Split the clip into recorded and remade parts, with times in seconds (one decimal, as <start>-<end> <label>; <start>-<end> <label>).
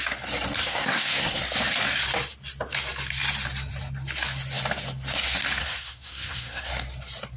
0.0-0.6 recorded; 0.6-1.4 remade; 1.4-5.6 recorded; 5.6-6.7 remade; 6.7-7.4 recorded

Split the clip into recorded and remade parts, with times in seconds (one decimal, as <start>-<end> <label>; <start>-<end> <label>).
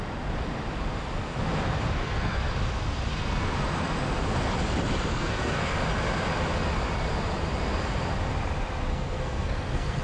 0.0-2.0 recorded; 2.0-2.5 remade; 2.5-5.1 recorded; 5.1-5.7 remade; 5.7-8.9 recorded; 8.9-10.0 remade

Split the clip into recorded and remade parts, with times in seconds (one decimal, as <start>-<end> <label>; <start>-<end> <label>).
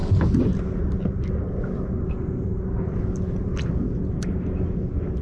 0.0-2.1 recorded; 2.1-2.6 remade; 2.6-5.2 recorded